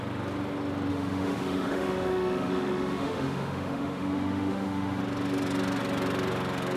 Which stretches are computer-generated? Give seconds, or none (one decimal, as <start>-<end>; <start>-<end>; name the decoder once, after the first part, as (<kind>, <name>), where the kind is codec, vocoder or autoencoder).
0.9-5.0 (autoencoder, DAC-VAE)